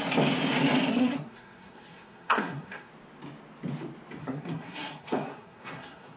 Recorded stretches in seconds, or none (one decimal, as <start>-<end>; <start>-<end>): 0.0-0.9; 2.9-4.2